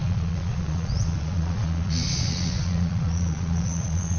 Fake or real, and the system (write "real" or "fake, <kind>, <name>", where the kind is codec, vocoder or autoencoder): fake, vocoder, Vocos